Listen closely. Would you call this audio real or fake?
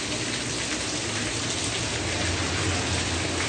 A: real